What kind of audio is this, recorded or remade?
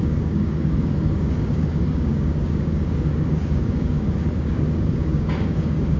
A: remade